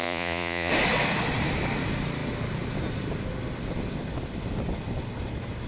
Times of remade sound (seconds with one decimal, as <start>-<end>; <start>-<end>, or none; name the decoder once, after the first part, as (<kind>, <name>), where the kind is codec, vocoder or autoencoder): 0.0-0.7 (vocoder, Vocos)